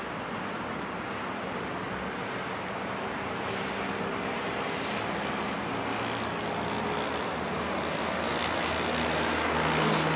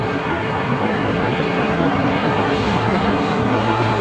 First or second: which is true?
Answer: first